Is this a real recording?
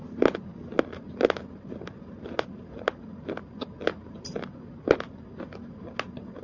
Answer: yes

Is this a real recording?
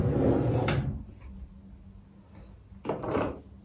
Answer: yes